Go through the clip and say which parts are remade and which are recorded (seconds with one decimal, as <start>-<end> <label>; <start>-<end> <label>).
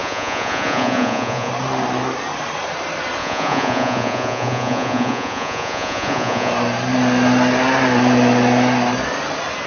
0.0-1.5 remade; 1.5-3.2 recorded; 3.2-6.5 remade; 6.5-9.7 recorded